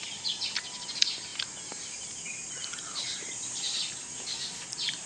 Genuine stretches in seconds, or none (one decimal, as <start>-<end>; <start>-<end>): 0.0-5.1